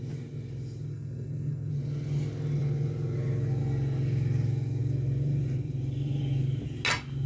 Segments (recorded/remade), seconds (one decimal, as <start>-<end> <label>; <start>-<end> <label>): 0.0-0.9 recorded; 0.9-1.7 remade; 1.7-7.3 recorded

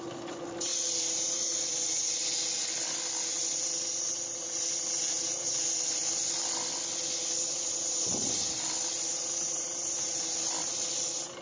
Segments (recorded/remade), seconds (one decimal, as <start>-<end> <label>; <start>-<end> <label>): 0.0-11.4 recorded

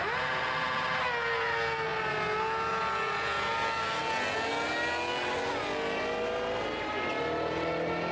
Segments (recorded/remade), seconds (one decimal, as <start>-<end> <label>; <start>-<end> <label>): 0.0-8.1 recorded

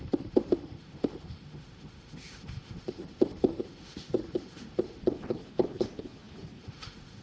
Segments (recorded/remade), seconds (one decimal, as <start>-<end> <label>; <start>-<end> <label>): 0.0-5.0 remade; 5.0-6.6 recorded; 6.6-7.2 remade

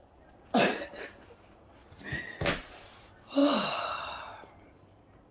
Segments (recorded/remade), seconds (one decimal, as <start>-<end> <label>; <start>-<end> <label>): 0.0-5.3 remade

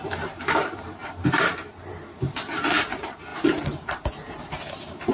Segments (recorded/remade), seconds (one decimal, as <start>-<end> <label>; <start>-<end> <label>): 0.0-5.1 remade

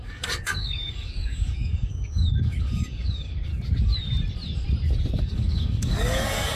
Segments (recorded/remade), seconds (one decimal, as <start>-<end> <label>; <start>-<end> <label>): 0.0-3.5 remade; 3.5-5.2 recorded; 5.2-6.6 remade

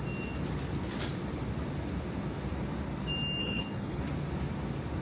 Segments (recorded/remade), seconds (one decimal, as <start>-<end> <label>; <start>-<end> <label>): 0.0-3.4 recorded; 3.4-4.0 remade; 4.0-5.0 recorded